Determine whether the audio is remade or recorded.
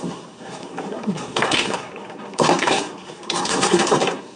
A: remade